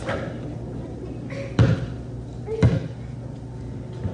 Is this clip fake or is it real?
real